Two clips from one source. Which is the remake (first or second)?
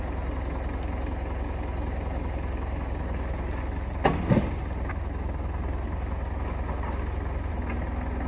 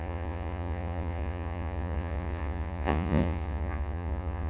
second